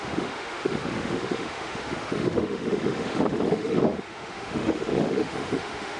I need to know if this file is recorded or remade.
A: remade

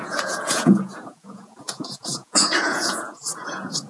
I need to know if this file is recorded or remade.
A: remade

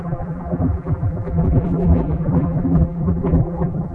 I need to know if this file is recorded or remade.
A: remade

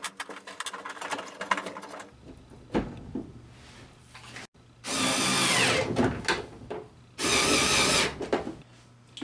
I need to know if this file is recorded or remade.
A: recorded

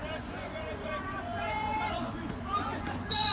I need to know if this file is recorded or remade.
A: remade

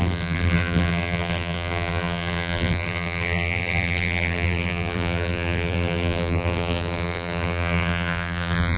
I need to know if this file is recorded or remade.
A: remade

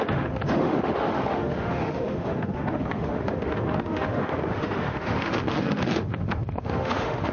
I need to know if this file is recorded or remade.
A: remade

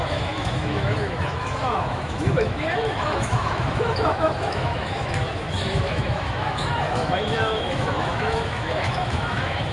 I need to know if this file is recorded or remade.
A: remade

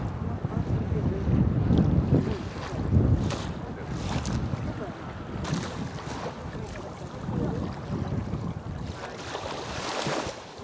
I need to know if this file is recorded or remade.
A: recorded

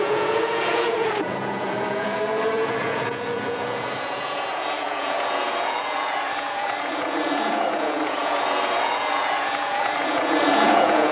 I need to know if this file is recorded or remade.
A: remade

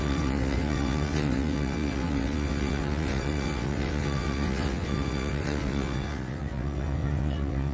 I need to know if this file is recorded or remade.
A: remade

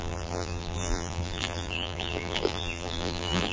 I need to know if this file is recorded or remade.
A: remade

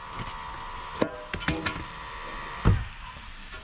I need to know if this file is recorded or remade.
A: recorded